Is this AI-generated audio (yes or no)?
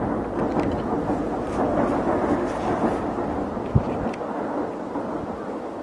no